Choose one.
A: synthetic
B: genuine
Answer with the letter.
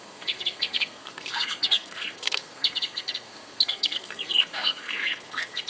A